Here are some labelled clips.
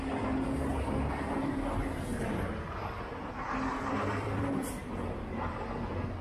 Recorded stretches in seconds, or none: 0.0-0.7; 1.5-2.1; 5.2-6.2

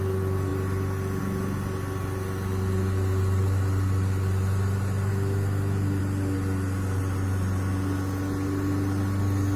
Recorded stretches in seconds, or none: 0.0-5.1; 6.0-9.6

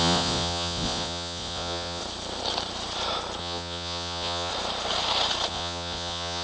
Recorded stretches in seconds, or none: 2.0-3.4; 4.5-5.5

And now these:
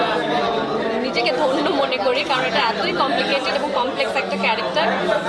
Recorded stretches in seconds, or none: 0.0-5.3